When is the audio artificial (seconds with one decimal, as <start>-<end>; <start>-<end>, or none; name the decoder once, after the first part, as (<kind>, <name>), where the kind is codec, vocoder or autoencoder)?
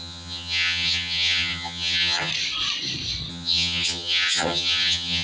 0.0-2.3 (vocoder, HiFi-GAN); 3.3-5.2